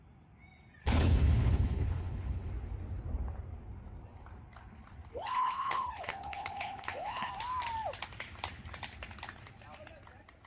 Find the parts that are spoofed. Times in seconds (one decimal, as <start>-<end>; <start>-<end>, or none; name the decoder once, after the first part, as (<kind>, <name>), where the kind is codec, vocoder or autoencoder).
0.8-2.5 (codec, HILCodec); 5.1-7.3